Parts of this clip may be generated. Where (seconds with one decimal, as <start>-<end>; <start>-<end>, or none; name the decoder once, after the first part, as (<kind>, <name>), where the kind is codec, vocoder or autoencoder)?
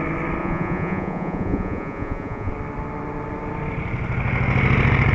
0.4-2.5 (vocoder, Vocos)